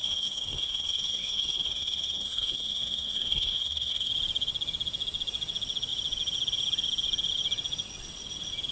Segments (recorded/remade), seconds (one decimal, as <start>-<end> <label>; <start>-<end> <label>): 0.0-4.1 remade; 4.1-8.7 recorded